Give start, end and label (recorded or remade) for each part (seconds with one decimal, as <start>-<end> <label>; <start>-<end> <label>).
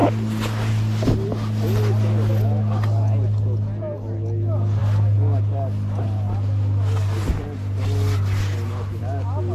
0.0-9.5 recorded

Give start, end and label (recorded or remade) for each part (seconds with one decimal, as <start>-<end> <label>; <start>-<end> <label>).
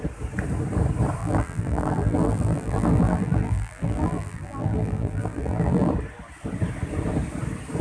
0.0-1.2 recorded; 1.2-5.9 remade; 5.9-7.8 recorded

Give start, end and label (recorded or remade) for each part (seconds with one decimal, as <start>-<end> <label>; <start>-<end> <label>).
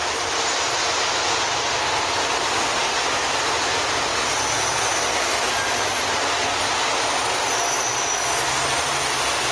0.0-9.5 recorded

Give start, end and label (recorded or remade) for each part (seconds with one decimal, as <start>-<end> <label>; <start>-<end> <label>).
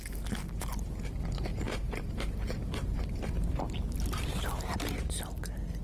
0.0-1.5 recorded; 1.5-3.6 remade; 3.6-5.8 recorded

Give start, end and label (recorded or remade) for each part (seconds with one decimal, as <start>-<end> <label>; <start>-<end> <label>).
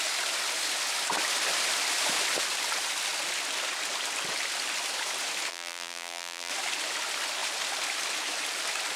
0.0-5.5 recorded; 5.5-6.5 remade; 6.5-9.0 recorded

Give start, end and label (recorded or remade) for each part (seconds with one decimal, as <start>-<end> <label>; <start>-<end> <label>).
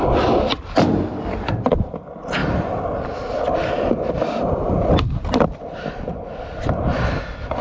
0.0-2.4 remade; 2.4-4.1 recorded; 4.1-7.6 remade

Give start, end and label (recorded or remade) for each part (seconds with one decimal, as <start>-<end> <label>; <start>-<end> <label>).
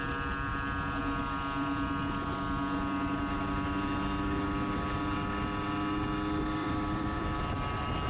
0.0-0.5 recorded; 0.5-1.0 remade; 1.0-6.6 recorded; 6.6-7.6 remade; 7.6-8.1 recorded